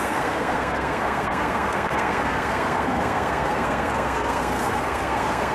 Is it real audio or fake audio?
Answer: fake